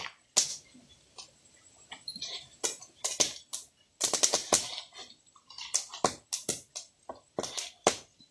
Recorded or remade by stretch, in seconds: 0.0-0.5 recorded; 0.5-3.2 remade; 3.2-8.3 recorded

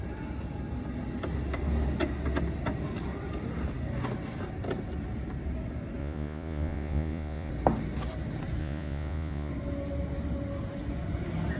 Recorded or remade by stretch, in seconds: 0.0-6.0 recorded; 6.0-7.5 remade; 7.5-8.6 recorded; 8.6-9.5 remade; 9.5-11.6 recorded

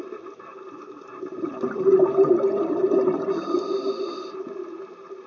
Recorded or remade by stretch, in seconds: 0.0-0.5 recorded; 0.5-3.7 remade; 3.7-5.3 recorded